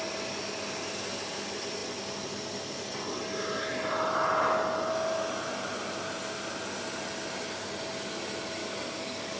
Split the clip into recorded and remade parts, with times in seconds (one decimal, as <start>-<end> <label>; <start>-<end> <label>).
0.0-8.6 recorded; 8.6-9.4 remade